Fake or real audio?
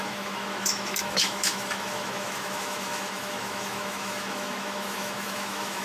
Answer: fake